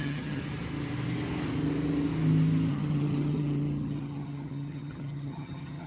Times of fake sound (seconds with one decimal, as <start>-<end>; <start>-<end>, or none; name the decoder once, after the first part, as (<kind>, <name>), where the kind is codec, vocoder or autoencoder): 0.0-0.4 (vocoder, HiFi-GAN); 2.7-5.9